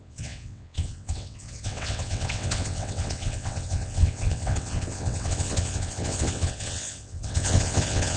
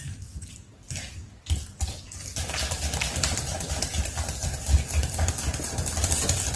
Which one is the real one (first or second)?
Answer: second